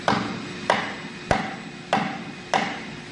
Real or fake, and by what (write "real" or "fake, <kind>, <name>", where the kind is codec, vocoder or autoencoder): real